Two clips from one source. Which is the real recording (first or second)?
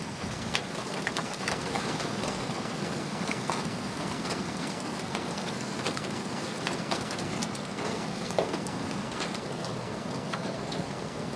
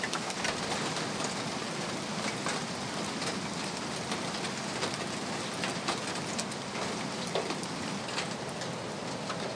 second